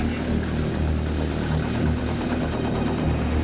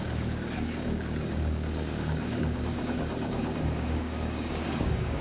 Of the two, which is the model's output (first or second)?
second